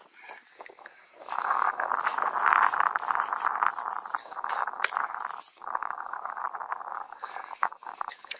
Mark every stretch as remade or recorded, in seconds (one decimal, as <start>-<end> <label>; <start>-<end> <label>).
0.0-0.5 recorded; 0.5-1.9 remade; 1.9-4.2 recorded; 4.2-4.8 remade; 4.8-5.5 recorded; 5.5-6.4 remade; 6.4-6.9 recorded; 6.9-8.4 remade

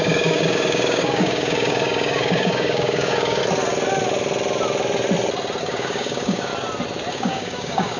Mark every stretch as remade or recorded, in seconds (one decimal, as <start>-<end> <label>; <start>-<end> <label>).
0.0-3.4 remade; 3.4-5.6 recorded; 5.6-6.5 remade; 6.5-7.1 recorded; 7.1-8.0 remade